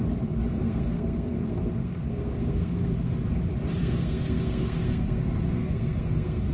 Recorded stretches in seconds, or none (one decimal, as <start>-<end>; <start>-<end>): 0.0-0.6; 3.1-3.8